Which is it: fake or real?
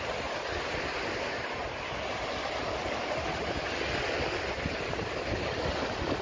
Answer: real